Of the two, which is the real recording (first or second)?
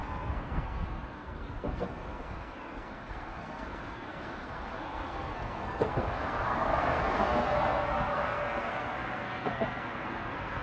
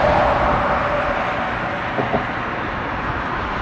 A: second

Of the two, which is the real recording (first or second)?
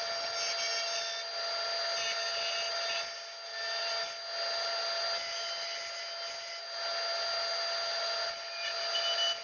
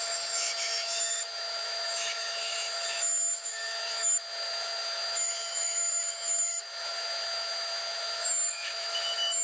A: first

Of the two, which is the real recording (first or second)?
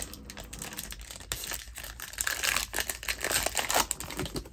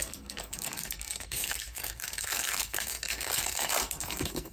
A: first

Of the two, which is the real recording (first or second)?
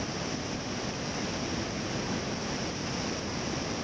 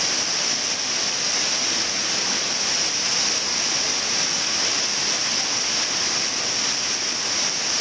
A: second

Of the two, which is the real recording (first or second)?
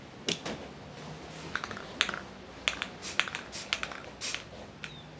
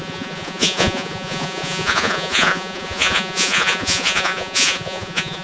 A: first